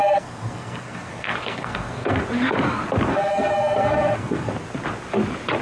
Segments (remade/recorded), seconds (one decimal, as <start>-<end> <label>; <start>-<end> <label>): 0.0-2.2 remade; 2.2-3.1 recorded; 3.1-4.5 remade; 4.5-5.6 recorded